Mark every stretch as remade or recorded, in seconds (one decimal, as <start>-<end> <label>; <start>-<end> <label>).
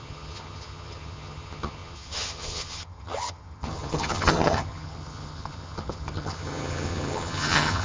0.0-7.8 remade